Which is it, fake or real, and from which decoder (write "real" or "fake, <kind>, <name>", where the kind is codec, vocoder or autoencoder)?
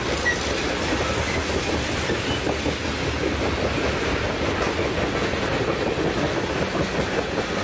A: real